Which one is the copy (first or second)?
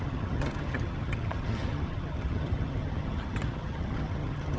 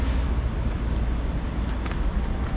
first